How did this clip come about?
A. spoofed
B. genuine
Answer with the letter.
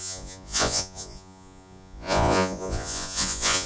A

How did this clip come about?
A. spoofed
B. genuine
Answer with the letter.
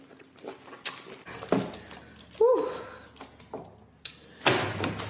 B